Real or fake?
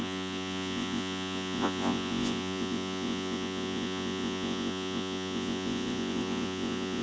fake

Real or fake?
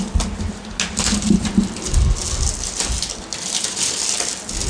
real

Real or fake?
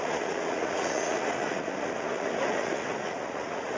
fake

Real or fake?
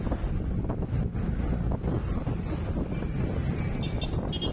real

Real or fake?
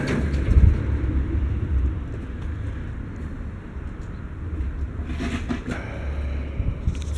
real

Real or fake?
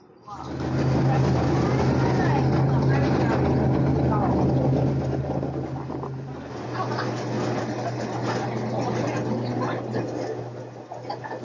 real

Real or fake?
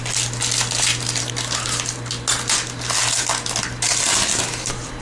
real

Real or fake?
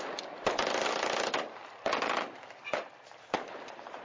real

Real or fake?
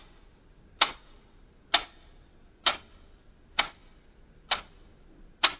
real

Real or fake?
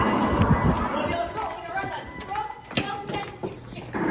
real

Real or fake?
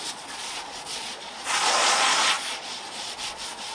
fake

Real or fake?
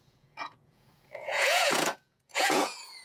fake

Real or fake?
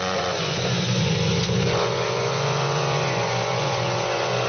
fake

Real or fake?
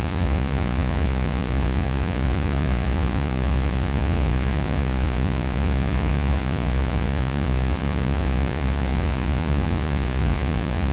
fake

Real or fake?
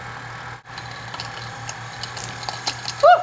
real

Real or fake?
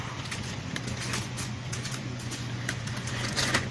fake